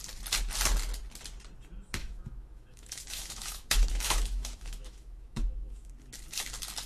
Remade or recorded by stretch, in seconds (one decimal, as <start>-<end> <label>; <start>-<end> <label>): 0.0-2.0 recorded; 2.0-5.9 remade; 5.9-6.9 recorded

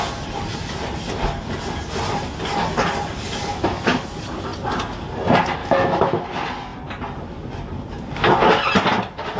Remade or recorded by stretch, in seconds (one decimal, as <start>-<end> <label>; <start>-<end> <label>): 0.0-3.5 recorded; 3.5-4.0 remade; 4.0-5.6 recorded; 5.6-6.2 remade; 6.2-9.4 recorded